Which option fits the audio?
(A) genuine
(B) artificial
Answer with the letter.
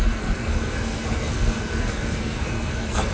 B